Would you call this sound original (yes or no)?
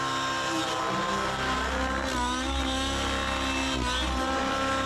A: yes